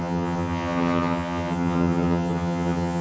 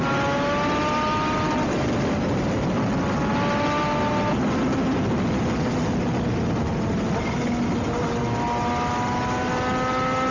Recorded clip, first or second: second